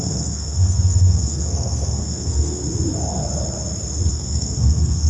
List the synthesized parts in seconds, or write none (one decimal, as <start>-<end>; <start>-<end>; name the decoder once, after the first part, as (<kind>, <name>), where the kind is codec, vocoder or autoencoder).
0.0-2.6 (codec, SNAC); 4.1-5.1